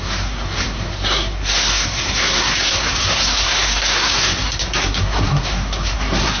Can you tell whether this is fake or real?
fake